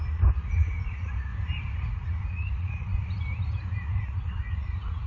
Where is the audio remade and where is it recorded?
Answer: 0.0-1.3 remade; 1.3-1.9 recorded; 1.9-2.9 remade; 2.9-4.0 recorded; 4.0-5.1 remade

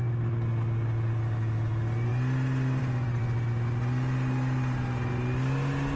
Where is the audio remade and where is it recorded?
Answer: 0.0-6.0 recorded

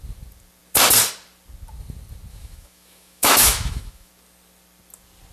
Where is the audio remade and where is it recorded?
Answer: 0.0-2.3 recorded; 2.3-4.1 remade; 4.1-5.3 recorded